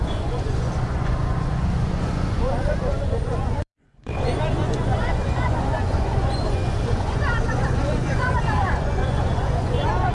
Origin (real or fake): fake